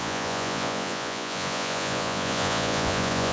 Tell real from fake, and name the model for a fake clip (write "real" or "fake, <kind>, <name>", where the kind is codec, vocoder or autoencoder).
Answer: fake, vocoder, Vocos